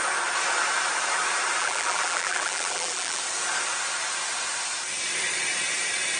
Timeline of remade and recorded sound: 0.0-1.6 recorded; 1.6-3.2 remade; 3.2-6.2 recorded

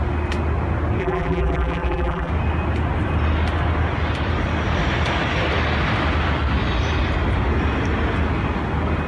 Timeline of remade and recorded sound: 0.0-1.0 recorded; 1.0-2.3 remade; 2.3-9.1 recorded

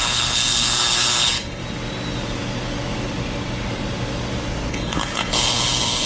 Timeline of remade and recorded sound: 0.0-1.6 remade; 1.6-4.7 recorded; 4.7-6.1 remade

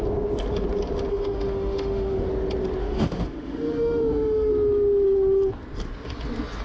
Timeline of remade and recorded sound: 0.0-1.1 recorded; 1.1-2.3 remade; 2.3-2.8 recorded; 2.8-4.5 remade; 4.5-6.6 recorded

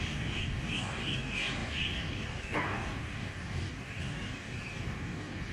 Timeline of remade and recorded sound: 0.0-5.5 remade

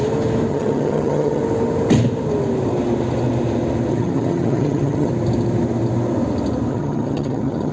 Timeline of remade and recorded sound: 0.0-0.5 recorded; 0.5-1.4 remade; 1.4-3.9 recorded; 3.9-5.1 remade; 5.1-6.7 recorded; 6.7-7.7 remade

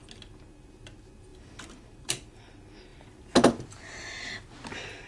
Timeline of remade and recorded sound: 0.0-1.3 recorded; 1.3-2.5 remade; 2.5-5.1 recorded